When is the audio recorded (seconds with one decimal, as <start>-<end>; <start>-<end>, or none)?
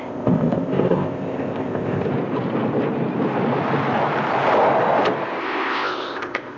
2.1-5.4